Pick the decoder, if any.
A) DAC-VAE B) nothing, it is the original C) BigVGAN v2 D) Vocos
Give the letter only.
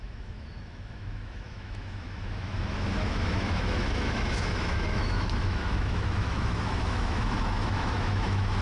A